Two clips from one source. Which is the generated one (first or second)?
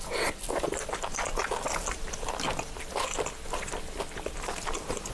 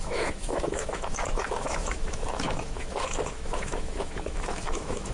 second